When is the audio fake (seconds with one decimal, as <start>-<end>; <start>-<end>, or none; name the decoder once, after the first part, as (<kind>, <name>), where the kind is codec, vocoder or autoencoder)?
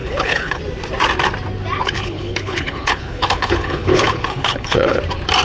0.0-0.6 (codec, HILCodec); 1.8-5.0